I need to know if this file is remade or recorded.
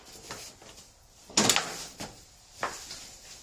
recorded